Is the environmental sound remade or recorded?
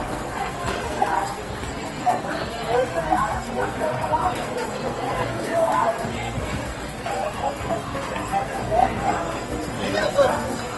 remade